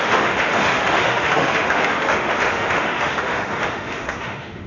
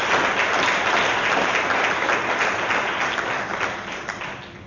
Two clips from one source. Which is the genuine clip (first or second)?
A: second